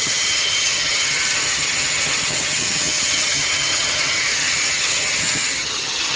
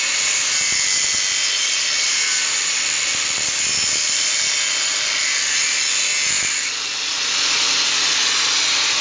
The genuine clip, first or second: second